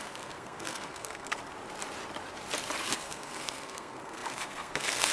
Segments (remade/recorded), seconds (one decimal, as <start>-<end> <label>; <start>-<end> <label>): 0.0-1.4 remade; 1.4-2.9 recorded; 2.9-5.1 remade